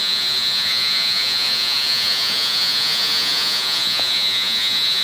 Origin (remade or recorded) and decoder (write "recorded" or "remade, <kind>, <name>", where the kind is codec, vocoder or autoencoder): remade, vocoder, Vocos